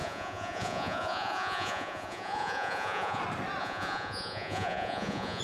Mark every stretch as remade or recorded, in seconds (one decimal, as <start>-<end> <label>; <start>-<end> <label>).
0.0-3.2 remade; 3.2-3.6 recorded; 3.6-5.4 remade